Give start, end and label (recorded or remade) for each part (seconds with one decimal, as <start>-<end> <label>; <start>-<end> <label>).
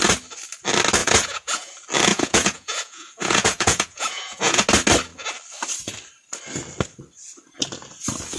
0.0-1.0 recorded; 1.0-1.7 remade; 1.7-2.1 recorded; 2.1-4.6 remade; 4.6-8.4 recorded